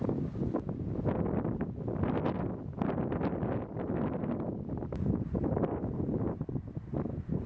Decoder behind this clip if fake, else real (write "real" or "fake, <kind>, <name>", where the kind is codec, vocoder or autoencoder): real